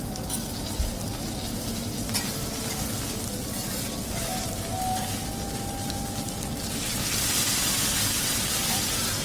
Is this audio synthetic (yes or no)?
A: no